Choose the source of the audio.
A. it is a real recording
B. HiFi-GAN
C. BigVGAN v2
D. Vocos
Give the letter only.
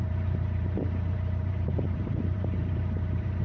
C